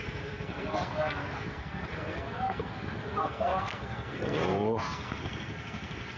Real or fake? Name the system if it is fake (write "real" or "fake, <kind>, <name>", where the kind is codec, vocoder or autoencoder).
fake, codec, SNAC